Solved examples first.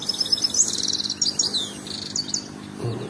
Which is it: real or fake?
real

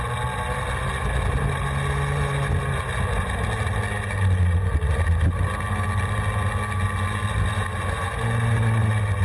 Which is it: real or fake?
real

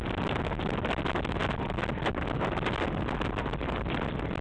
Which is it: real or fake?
real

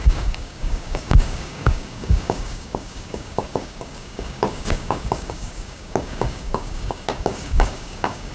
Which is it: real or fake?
fake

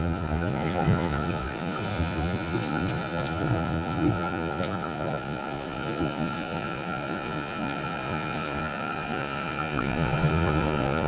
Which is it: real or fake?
fake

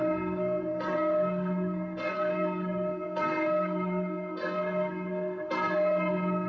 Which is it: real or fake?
fake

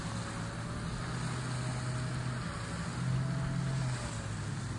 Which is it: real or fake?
real